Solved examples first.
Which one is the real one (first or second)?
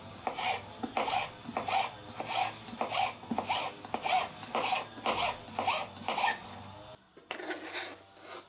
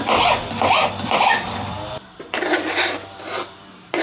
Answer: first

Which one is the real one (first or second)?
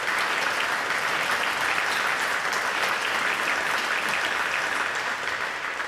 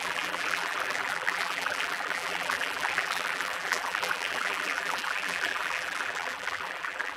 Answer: first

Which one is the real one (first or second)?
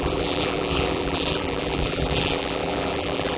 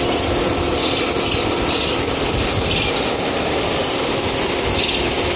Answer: second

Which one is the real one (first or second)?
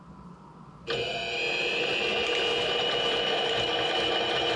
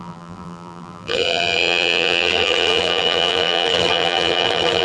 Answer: first